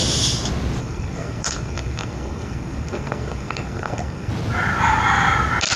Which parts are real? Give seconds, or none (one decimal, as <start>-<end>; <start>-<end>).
0.0-0.8; 4.3-5.8